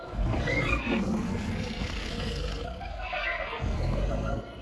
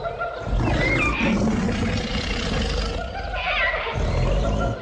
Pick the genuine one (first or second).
second